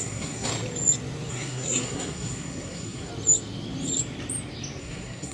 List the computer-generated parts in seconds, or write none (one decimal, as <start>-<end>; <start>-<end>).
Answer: 0.0-0.5; 1.3-3.1; 4.8-5.3